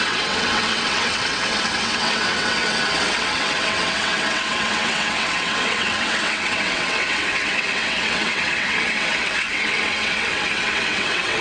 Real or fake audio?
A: fake